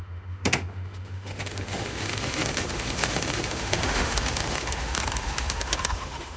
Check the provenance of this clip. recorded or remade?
remade